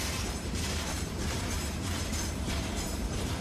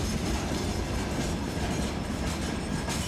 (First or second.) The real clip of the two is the second